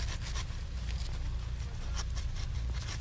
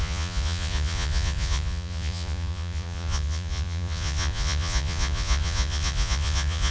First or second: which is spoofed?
second